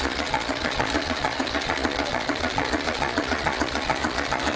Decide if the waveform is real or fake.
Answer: fake